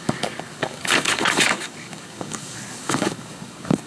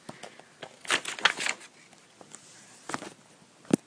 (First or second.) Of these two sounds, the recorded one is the second